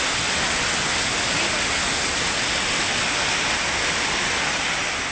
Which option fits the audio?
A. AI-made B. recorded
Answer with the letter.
B